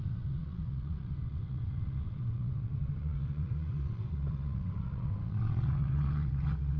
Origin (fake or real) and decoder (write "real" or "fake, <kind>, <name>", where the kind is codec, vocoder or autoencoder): fake, vocoder, WaveNeXt